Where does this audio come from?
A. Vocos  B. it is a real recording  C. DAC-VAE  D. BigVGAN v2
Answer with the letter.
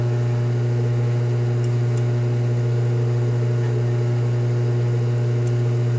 B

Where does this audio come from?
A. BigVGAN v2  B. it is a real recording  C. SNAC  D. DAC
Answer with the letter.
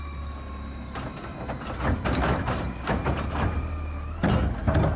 B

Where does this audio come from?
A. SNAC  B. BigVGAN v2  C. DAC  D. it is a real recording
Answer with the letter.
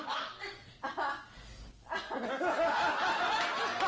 D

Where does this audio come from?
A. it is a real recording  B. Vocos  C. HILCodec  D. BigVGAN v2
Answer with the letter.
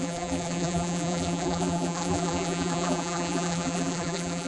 D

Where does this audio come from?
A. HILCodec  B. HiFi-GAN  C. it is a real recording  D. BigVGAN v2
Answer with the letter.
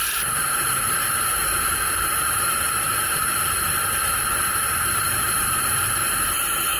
D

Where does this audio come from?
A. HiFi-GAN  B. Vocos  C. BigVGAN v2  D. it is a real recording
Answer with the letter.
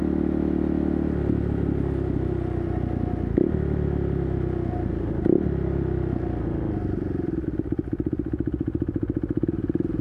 D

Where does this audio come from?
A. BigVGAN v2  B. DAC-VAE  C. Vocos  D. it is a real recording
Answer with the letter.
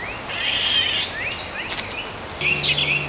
D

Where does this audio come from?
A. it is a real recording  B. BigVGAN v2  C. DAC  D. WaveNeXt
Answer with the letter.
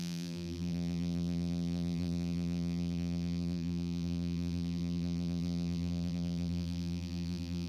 B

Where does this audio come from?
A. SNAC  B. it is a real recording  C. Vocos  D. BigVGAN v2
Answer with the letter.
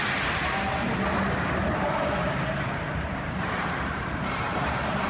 D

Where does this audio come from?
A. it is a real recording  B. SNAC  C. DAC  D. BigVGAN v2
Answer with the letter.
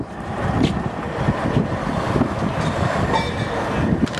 A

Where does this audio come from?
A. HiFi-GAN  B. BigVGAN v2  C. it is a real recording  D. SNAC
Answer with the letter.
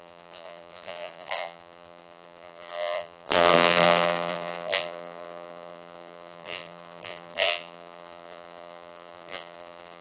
B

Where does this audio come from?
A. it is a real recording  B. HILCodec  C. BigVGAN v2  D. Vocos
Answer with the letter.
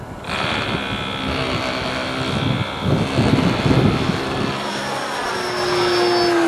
A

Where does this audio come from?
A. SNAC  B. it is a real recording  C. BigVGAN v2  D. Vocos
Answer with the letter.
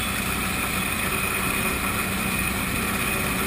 B